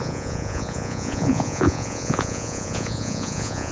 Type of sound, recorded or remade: remade